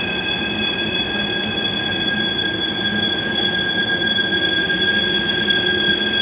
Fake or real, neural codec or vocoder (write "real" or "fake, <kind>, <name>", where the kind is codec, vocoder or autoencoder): real